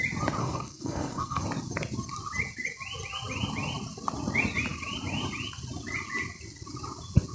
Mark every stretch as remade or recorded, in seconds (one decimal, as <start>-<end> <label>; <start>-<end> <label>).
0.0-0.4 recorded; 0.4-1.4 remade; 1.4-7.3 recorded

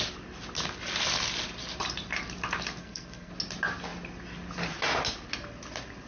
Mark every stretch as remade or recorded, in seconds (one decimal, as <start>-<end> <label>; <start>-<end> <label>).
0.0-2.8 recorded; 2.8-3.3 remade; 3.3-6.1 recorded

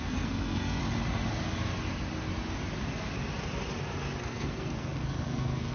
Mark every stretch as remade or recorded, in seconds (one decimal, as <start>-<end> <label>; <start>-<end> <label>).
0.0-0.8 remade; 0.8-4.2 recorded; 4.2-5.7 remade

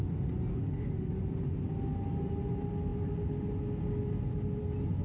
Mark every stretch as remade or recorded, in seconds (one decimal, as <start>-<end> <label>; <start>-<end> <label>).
0.0-0.5 recorded; 0.5-1.1 remade; 1.1-5.0 recorded

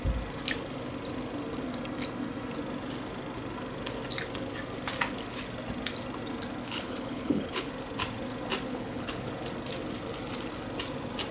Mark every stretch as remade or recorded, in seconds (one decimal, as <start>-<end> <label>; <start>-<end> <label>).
0.0-6.6 recorded; 6.6-7.7 remade; 7.7-8.7 recorded; 8.7-9.3 remade; 9.3-11.3 recorded

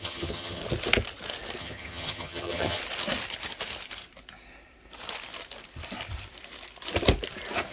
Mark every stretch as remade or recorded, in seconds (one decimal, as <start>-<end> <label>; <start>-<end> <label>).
0.0-0.6 remade; 0.6-1.6 recorded; 1.6-2.8 remade; 2.8-7.7 recorded

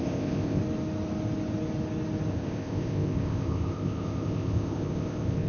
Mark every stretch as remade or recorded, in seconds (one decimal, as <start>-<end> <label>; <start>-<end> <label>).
0.0-0.6 remade; 0.6-2.3 recorded; 2.3-5.5 remade